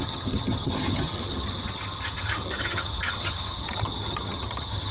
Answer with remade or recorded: remade